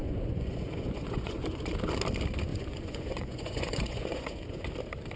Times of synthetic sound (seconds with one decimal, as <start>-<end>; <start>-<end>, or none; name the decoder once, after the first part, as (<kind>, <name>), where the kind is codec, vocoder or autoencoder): 0.0-1.7 (vocoder, Vocos); 2.5-4.7